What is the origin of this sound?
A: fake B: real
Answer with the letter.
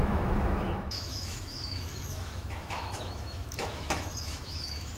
A